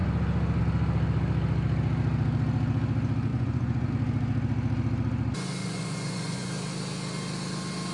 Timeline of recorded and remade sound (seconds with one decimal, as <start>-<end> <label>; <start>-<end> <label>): 0.0-3.3 recorded; 3.3-3.9 remade; 3.9-5.6 recorded; 5.6-6.5 remade; 6.5-7.9 recorded